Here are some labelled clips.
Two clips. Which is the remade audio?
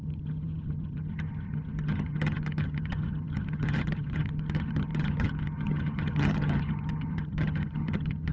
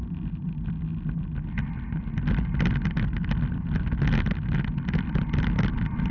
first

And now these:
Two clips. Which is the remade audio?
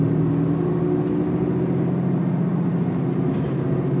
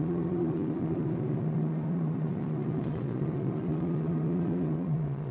second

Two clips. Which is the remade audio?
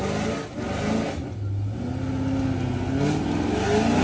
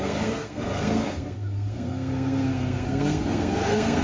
second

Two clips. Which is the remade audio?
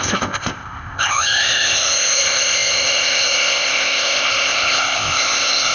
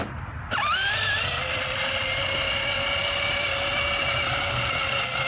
first